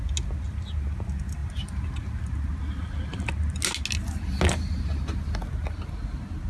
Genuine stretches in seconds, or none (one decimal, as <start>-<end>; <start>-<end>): 0.0-6.5